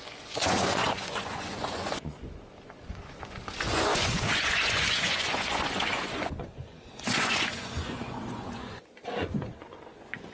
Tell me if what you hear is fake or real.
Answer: fake